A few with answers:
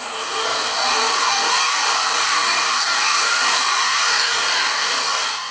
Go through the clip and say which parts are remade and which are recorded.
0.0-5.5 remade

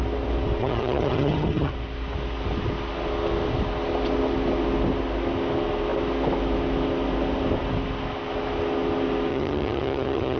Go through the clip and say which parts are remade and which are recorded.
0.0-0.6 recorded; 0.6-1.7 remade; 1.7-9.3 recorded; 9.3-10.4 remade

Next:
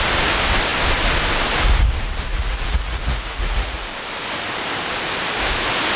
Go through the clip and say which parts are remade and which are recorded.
0.0-2.3 recorded; 2.3-3.9 remade; 3.9-6.0 recorded

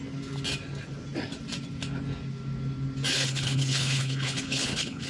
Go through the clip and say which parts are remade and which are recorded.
0.0-3.1 recorded; 3.1-5.1 remade

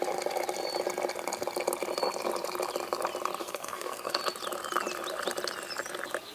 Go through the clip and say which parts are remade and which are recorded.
0.0-3.4 recorded; 3.4-4.2 remade; 4.2-6.3 recorded